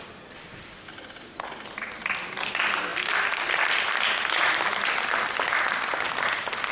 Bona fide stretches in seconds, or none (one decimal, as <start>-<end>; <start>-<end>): 0.0-6.7